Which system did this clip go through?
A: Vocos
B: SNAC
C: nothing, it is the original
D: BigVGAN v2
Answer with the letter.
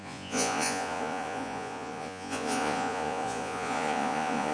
A